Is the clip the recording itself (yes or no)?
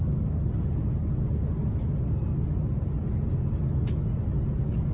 yes